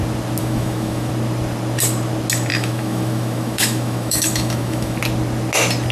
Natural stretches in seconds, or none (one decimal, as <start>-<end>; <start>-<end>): 0.0-0.4; 1.1-2.5; 5.0-5.9